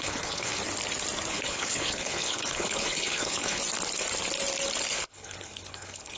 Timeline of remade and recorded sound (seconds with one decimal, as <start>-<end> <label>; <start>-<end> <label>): 0.0-0.6 remade; 0.6-1.3 recorded; 1.3-3.6 remade; 3.6-4.9 recorded; 4.9-6.2 remade